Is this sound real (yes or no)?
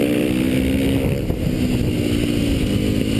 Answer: yes